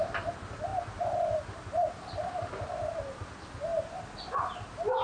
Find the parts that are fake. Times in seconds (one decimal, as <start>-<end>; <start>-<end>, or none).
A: none